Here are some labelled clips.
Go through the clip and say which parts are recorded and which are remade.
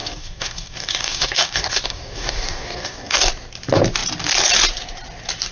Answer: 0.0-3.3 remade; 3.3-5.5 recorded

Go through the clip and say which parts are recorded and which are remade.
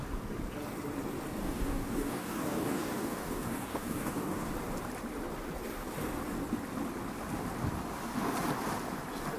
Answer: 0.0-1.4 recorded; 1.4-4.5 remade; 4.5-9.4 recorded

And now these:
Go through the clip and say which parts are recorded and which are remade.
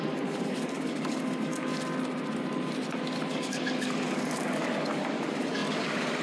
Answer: 0.0-1.7 remade; 1.7-3.3 recorded; 3.3-6.2 remade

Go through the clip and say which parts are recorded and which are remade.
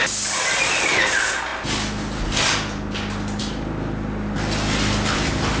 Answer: 0.0-5.6 recorded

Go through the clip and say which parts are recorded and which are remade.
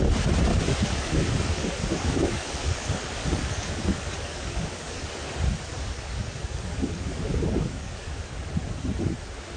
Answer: 0.0-0.5 recorded; 0.5-5.1 remade; 5.1-5.7 recorded; 5.7-8.5 remade; 8.5-9.6 recorded